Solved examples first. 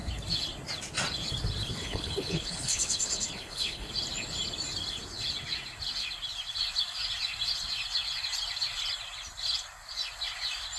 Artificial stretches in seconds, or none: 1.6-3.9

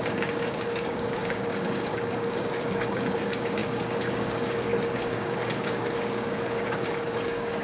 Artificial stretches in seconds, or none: 0.0-7.6

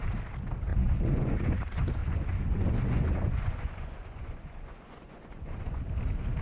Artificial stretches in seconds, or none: 0.7-1.6; 2.0-5.8

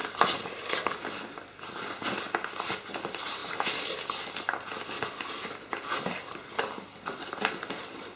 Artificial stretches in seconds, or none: none

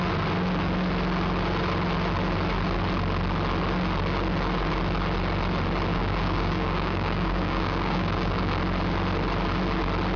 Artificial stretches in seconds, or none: 5.9-8.6

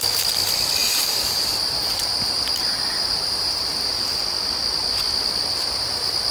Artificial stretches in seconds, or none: 0.8-4.2

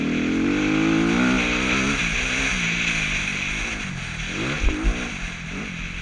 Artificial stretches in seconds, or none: none

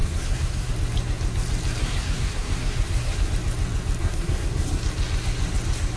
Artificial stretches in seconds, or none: 0.0-0.7; 1.8-3.3; 4.0-4.8